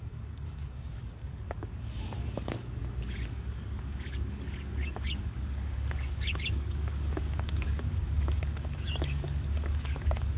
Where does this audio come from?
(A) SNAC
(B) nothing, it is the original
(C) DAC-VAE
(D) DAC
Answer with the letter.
D